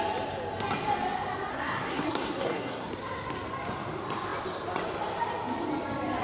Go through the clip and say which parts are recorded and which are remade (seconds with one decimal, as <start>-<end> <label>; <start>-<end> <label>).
0.0-1.5 recorded; 1.5-2.9 remade; 2.9-6.2 recorded

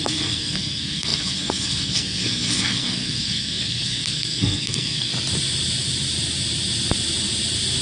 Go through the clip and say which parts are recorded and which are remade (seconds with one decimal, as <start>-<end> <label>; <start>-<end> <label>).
0.0-5.1 remade; 5.1-7.8 recorded